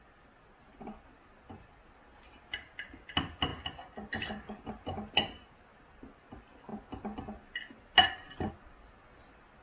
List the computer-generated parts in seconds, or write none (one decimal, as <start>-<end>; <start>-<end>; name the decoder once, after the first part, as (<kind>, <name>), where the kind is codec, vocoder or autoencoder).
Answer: none